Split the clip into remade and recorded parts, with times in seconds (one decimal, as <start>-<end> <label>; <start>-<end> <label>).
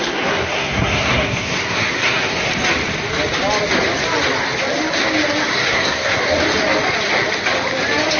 0.0-2.5 remade; 2.5-5.5 recorded; 5.5-6.2 remade; 6.2-8.2 recorded